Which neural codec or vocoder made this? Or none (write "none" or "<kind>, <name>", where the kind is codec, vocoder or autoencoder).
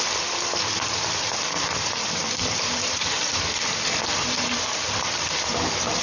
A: vocoder, BigVGAN v2